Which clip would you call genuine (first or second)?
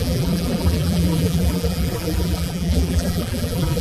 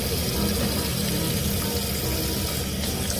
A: second